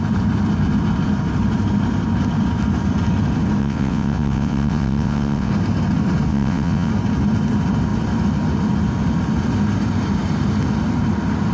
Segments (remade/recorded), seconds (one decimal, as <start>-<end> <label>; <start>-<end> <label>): 0.0-3.6 recorded; 3.6-5.5 remade; 5.5-6.3 recorded; 6.3-6.9 remade; 6.9-11.5 recorded